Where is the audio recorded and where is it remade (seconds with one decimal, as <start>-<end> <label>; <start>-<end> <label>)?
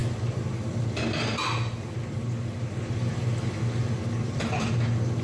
0.0-5.2 recorded